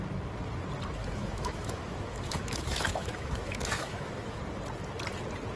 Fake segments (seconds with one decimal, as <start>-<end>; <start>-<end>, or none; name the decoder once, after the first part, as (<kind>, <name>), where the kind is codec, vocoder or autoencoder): 1.0-4.4 (autoencoder, DAC-VAE)